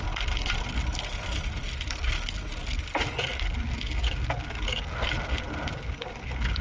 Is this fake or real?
real